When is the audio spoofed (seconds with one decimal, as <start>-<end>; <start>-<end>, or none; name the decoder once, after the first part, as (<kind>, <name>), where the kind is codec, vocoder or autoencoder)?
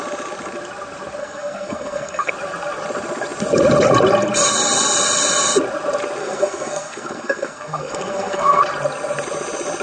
1.2-2.3 (codec, SNAC); 6.2-8.6